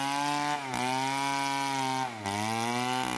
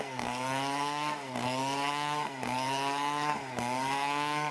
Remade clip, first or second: second